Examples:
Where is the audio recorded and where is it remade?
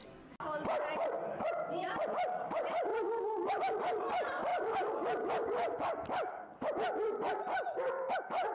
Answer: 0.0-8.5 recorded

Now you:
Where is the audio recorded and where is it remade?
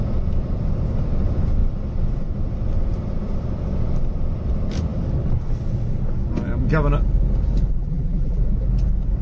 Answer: 0.0-7.8 recorded; 7.8-8.4 remade; 8.4-9.2 recorded